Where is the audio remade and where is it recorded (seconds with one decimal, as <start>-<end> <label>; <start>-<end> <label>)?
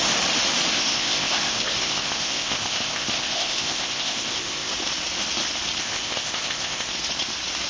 0.0-0.7 recorded; 0.7-4.7 remade; 4.7-5.8 recorded; 5.8-6.9 remade; 6.9-7.7 recorded